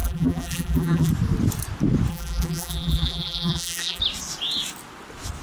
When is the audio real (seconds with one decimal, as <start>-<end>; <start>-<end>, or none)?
1.1-2.1; 4.0-5.4